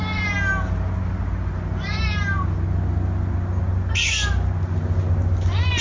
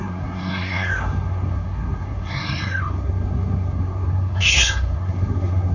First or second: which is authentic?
first